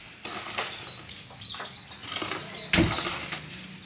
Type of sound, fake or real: real